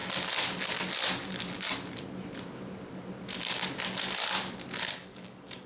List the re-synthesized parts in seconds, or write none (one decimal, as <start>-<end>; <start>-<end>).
4.9-5.7